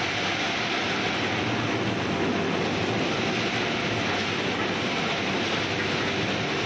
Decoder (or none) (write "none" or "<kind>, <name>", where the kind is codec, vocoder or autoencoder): none